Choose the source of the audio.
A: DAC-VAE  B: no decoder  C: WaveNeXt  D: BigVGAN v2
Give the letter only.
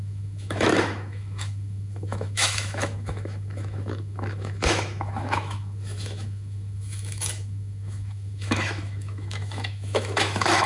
A